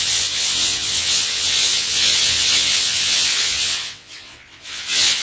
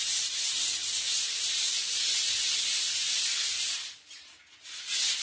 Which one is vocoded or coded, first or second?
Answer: first